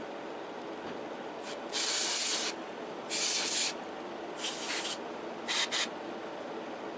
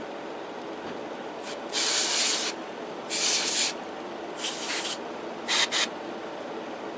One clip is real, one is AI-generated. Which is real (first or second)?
first